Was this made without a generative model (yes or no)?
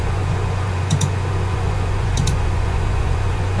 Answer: no